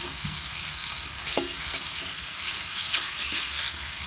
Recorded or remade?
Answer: remade